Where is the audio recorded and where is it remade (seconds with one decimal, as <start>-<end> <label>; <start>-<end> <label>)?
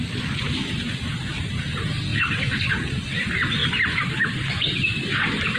0.0-5.6 recorded